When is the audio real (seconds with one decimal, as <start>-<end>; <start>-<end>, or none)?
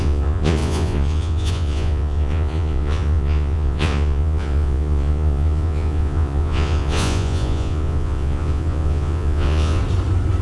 9.8-10.4